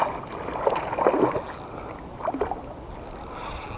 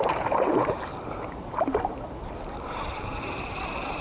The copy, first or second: second